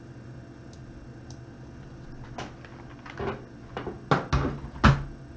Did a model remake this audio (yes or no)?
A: no